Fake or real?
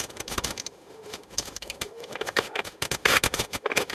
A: fake